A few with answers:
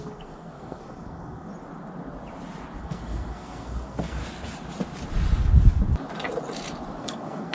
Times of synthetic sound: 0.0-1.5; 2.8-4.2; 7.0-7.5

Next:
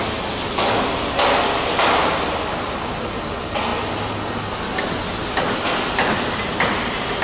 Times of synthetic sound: none

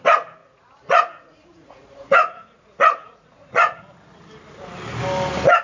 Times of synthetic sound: 0.4-3.8